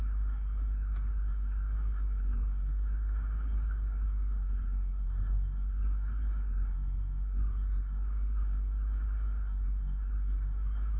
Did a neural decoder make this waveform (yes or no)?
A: yes